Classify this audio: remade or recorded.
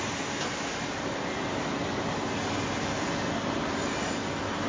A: recorded